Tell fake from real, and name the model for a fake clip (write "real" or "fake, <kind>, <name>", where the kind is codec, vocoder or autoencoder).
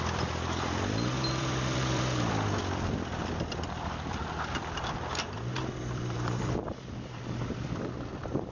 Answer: fake, vocoder, BigVGAN v2